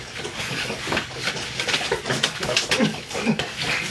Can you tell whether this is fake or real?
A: fake